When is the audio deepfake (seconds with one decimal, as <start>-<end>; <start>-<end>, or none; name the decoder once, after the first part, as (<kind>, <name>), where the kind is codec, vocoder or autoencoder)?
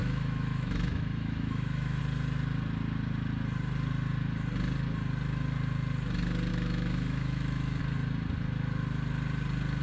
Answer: 0.0-2.0 (autoencoder, DAC-VAE); 6.5-7.8